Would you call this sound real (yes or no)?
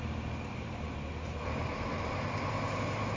no